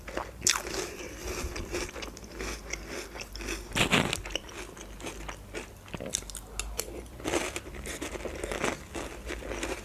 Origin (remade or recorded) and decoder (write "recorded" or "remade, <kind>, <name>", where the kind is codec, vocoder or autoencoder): recorded